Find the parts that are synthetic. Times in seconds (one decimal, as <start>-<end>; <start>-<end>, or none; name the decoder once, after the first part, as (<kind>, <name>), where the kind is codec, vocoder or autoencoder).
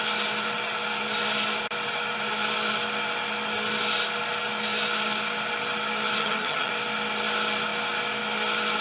6.2-6.7 (vocoder, HiFi-GAN)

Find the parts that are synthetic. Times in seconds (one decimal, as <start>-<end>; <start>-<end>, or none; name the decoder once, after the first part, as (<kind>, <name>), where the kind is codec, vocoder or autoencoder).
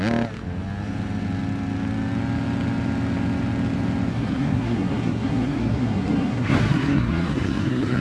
4.1-8.0 (codec, SNAC)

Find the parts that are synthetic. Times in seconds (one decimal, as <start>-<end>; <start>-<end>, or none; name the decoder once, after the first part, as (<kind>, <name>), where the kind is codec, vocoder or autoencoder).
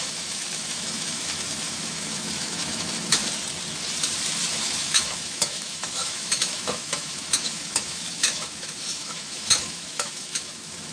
0.0-3.2 (autoencoder, DAC-VAE); 4.5-10.9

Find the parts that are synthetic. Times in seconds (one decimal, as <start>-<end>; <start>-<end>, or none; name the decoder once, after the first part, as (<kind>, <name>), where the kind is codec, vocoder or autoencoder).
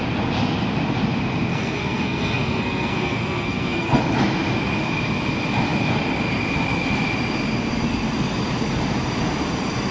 1.5-4.0 (codec, SNAC)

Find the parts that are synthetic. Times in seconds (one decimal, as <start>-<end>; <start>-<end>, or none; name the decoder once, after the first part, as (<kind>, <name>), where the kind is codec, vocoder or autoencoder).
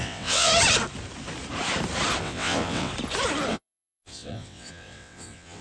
0.0-0.5 (vocoder, WaveNeXt); 2.2-2.9; 3.5-5.6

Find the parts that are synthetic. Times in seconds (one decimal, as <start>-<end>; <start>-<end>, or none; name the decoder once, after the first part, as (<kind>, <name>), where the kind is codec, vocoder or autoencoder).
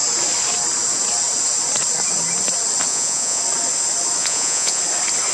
2.9-3.4 (vocoder, Vocos); 4.2-4.8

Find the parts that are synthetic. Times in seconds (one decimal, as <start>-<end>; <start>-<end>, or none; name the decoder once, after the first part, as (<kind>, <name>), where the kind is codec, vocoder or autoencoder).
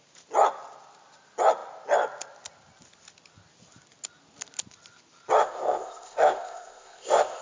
5.4-7.4 (codec, ZipCodec)